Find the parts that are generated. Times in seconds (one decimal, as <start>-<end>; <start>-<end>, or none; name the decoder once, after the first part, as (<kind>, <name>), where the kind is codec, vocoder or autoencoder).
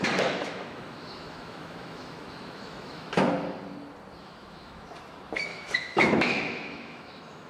0.0-3.1 (autoencoder, DAC-VAE); 4.2-4.9; 5.5-7.5